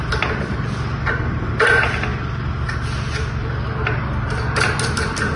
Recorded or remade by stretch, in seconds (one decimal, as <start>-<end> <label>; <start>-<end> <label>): 0.0-5.4 recorded